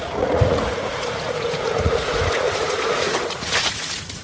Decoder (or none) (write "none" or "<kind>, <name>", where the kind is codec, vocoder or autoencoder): vocoder, Vocos